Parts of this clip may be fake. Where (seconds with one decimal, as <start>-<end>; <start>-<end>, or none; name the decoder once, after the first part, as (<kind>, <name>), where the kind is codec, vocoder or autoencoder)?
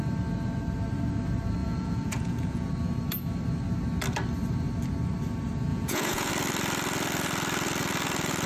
1.6-2.7 (vocoder, Vocos); 5.7-6.3